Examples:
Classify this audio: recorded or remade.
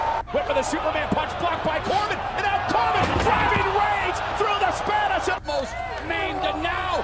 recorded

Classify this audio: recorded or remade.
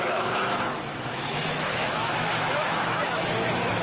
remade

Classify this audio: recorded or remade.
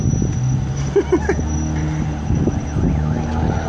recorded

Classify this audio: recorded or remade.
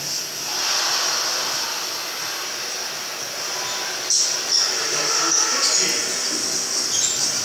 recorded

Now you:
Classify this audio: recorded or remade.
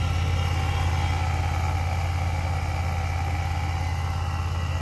recorded